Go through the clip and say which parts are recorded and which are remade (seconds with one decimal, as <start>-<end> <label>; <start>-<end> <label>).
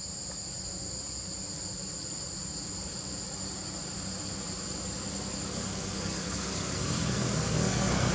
0.0-5.5 recorded; 5.5-8.1 remade